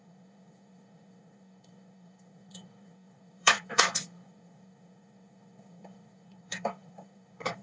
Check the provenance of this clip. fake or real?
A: fake